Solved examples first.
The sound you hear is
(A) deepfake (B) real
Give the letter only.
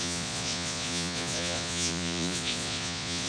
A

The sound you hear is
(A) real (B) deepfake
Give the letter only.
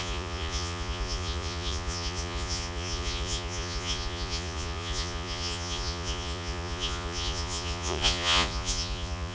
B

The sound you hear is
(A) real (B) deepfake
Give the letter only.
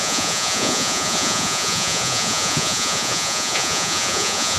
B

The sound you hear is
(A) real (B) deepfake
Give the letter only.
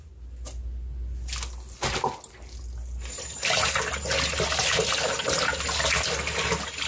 A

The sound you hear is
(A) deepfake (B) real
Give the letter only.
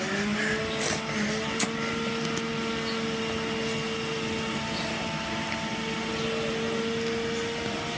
B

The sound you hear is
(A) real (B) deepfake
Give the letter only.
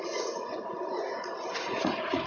B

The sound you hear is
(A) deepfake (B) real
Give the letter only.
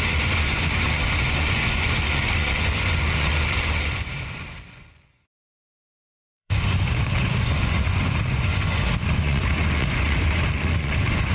A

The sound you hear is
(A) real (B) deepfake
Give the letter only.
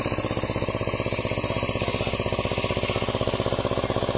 A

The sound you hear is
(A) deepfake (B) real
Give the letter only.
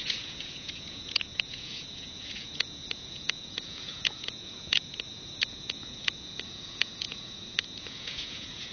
A